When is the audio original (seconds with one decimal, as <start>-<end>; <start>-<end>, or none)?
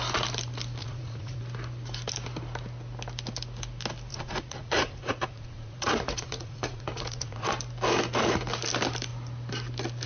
0.0-0.8; 1.4-4.1; 7.5-10.1